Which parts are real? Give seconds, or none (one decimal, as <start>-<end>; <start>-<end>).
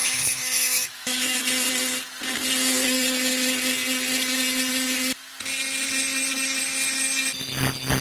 1.4-8.0